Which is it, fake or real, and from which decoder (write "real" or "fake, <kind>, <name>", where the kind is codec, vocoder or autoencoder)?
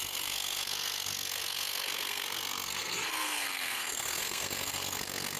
fake, codec, SNAC